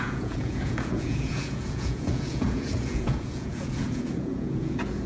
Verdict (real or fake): fake